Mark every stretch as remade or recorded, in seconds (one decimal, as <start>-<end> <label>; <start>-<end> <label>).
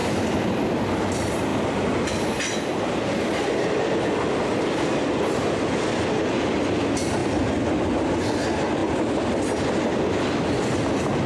0.0-0.7 remade; 0.7-1.5 recorded; 1.5-3.8 remade; 3.8-11.3 recorded